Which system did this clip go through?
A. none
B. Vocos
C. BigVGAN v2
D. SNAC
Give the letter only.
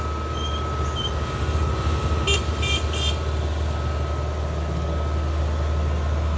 A